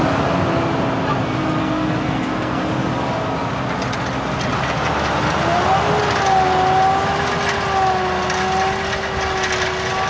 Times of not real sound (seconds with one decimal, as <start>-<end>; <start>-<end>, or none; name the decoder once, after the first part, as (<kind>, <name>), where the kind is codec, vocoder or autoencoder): 1.6-2.6 (codec, SNAC)